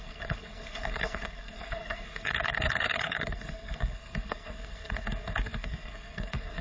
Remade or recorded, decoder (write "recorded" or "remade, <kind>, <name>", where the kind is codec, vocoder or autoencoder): remade, codec, SNAC